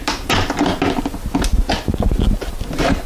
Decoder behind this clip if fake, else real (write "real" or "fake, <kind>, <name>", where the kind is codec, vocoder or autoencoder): real